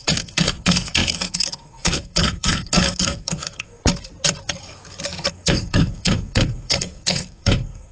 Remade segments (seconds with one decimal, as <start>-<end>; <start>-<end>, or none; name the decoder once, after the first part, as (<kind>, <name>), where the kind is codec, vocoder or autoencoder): 0.0-3.8 (codec, SNAC); 5.3-7.9